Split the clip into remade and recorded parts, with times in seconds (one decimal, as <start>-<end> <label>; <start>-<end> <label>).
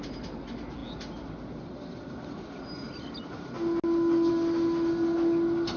0.0-5.8 recorded